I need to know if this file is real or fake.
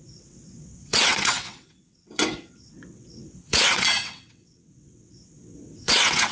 fake